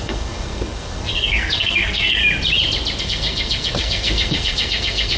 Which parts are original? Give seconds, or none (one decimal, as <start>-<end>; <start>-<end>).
2.2-3.0